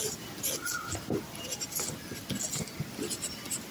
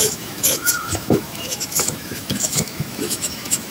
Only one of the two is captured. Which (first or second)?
first